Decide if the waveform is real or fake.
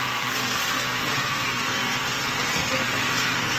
fake